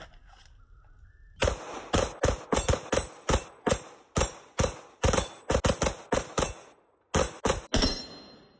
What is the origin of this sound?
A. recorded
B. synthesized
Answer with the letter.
A